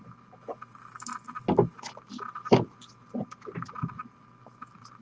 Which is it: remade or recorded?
recorded